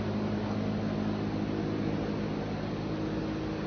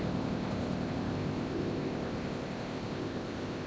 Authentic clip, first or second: first